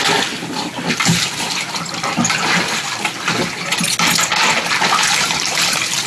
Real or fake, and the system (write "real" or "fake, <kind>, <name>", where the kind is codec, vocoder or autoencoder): real